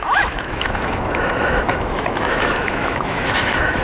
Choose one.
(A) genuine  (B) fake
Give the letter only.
B